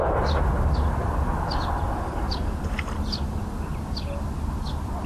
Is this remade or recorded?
recorded